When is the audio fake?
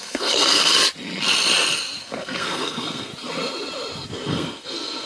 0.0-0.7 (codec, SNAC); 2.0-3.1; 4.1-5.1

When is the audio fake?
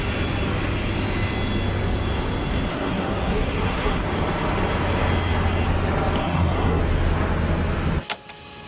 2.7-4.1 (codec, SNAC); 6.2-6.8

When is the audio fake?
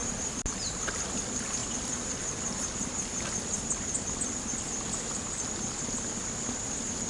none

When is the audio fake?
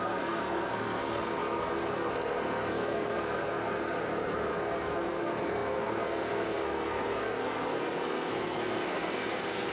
0.0-9.7 (codec, SNAC)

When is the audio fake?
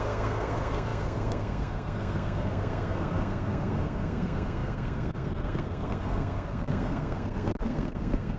0.0-8.4 (codec, SNAC)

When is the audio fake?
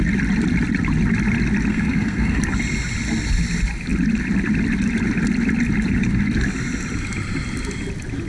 1.7-2.4 (codec, SNAC)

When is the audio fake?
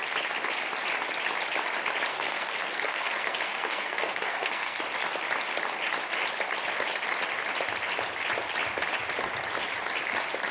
2.1-4.8 (codec, SNAC)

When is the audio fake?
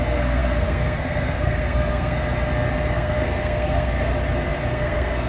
0.0-2.2 (codec, SNAC); 2.9-4.1; 4.7-5.3